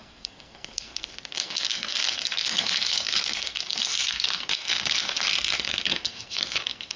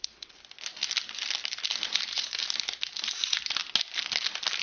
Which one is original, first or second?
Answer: second